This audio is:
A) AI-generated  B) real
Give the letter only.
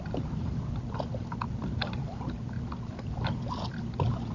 A